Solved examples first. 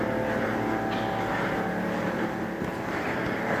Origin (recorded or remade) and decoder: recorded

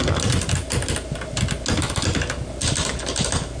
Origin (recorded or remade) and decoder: recorded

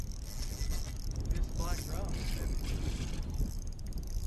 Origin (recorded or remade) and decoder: recorded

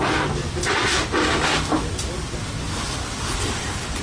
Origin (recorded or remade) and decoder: recorded